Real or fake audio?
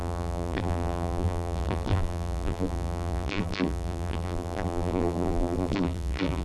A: fake